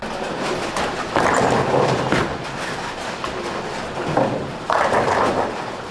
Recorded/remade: recorded